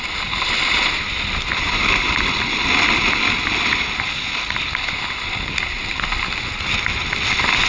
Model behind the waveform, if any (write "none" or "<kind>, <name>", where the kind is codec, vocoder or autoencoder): none